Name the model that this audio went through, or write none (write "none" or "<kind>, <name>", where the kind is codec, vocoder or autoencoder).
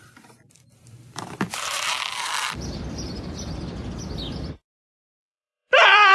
vocoder, BigVGAN v2